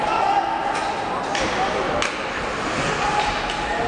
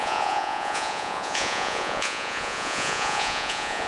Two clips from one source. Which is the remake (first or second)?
second